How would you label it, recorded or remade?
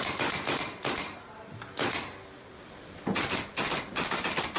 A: recorded